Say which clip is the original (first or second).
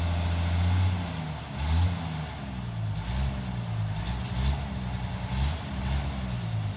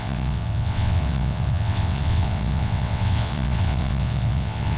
first